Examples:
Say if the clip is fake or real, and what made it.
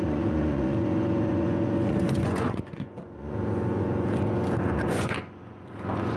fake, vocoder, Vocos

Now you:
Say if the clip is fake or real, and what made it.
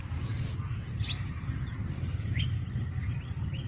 real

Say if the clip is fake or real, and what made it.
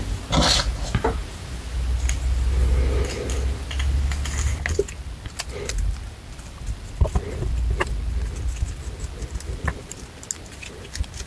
real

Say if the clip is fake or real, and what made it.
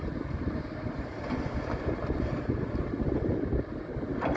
real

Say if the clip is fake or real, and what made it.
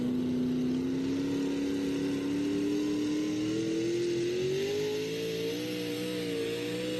real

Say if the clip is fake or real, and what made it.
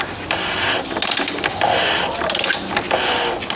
real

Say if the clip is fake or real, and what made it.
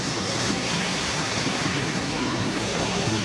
fake, codec, SNAC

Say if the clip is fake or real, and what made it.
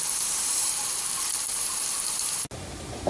real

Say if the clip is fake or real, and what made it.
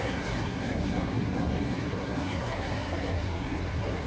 fake, codec, SNAC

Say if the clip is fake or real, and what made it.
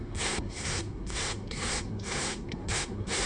fake, codec, SNAC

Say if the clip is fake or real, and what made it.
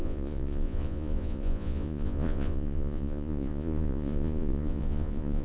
fake, vocoder, Vocos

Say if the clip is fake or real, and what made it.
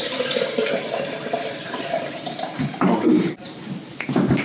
real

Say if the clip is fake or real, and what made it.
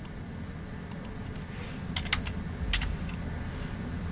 real